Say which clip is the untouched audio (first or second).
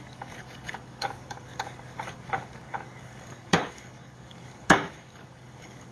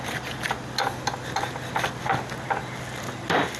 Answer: second